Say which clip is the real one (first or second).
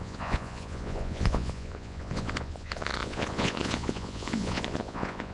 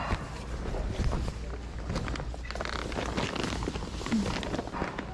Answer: second